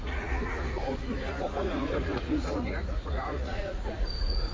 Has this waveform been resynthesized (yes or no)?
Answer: yes